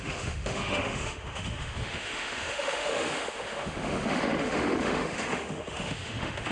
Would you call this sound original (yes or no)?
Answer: no